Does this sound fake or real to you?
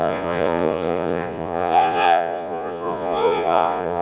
fake